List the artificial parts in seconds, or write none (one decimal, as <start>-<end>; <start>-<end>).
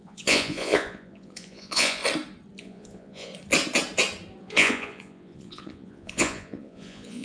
0.0-2.0; 2.6-3.3; 4.4-7.2